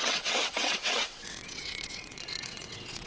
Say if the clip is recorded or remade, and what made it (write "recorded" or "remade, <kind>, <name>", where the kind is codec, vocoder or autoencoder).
remade, vocoder, WaveNeXt